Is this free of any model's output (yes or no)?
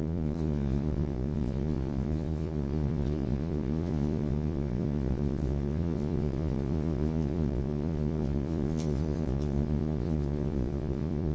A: no